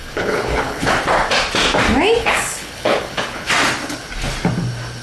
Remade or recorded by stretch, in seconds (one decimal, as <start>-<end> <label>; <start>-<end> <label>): 0.0-0.9 remade; 0.9-2.2 recorded; 2.2-3.5 remade; 3.5-5.0 recorded